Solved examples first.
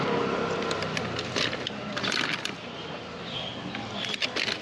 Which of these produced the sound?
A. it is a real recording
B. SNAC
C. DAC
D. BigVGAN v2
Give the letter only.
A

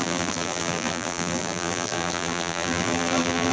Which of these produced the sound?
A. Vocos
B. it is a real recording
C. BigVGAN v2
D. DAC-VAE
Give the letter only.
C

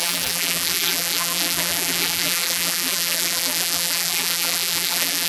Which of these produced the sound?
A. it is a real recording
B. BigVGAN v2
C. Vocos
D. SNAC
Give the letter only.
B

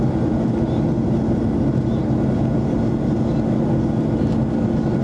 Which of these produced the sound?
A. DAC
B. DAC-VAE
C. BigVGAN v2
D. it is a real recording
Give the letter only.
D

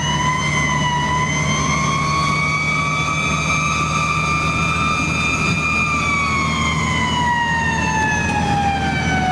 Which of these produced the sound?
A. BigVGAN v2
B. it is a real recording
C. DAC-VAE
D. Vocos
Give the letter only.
B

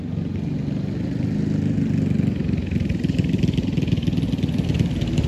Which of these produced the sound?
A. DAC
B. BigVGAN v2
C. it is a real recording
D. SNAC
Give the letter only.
C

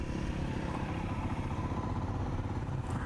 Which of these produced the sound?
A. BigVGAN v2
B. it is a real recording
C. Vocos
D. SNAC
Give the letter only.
A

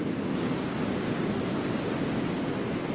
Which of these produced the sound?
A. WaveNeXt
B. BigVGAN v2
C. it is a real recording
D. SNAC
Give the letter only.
C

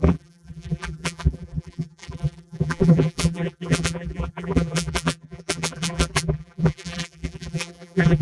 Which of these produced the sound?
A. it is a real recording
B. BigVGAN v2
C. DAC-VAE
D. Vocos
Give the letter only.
B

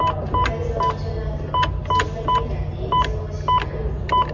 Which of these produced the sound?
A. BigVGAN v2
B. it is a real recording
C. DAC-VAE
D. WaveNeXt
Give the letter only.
B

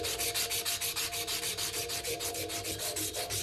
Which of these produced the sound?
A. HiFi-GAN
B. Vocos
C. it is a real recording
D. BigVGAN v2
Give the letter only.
C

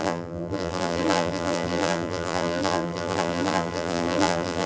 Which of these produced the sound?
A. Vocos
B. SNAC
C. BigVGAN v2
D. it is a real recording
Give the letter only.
C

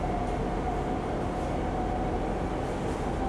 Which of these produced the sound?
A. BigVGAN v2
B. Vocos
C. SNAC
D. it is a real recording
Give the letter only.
D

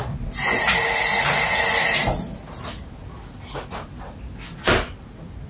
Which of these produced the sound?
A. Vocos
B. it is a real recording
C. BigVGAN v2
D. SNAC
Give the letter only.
B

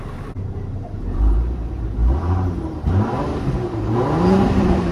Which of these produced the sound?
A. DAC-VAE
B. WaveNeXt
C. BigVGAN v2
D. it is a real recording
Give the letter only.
C